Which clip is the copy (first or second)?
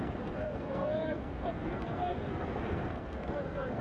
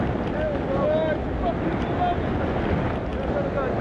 first